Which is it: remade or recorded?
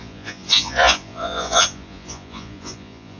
remade